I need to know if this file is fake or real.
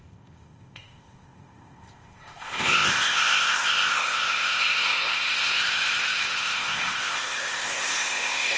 fake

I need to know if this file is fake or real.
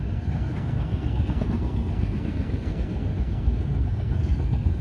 fake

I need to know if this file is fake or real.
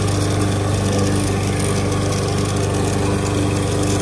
real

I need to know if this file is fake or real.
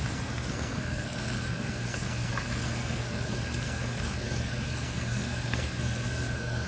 fake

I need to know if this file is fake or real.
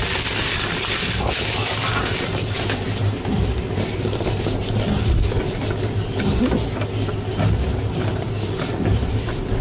real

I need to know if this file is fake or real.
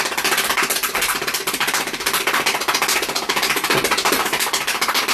real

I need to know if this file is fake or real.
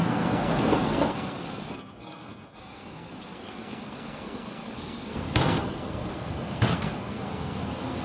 fake